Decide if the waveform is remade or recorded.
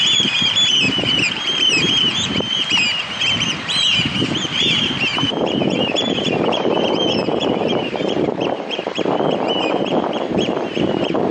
remade